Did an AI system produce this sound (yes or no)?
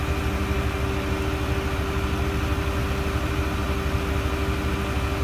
no